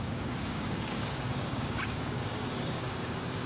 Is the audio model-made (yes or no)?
yes